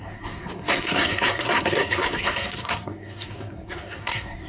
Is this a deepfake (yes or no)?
yes